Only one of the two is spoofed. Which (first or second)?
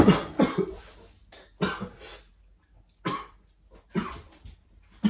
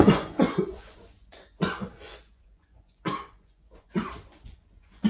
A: second